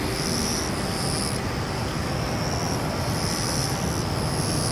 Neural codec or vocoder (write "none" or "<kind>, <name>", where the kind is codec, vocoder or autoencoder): none